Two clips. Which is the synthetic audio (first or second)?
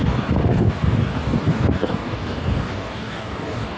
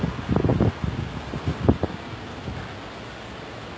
first